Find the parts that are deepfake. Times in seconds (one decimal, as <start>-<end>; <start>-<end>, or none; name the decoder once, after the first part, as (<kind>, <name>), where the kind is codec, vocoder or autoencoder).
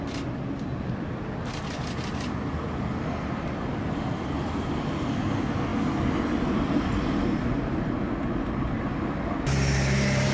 none